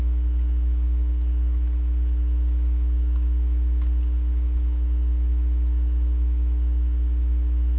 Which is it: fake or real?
real